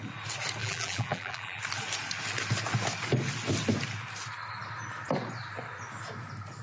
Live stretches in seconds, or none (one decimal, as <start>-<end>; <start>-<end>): 0.0-0.6; 1.6-6.6